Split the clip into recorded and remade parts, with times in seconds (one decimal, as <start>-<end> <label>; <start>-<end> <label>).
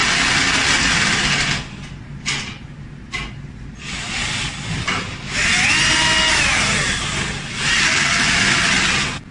0.0-9.3 recorded